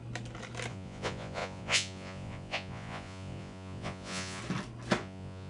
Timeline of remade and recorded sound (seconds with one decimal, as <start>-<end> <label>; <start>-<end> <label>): 0.0-0.7 recorded; 0.7-4.4 remade; 4.4-5.0 recorded; 5.0-5.5 remade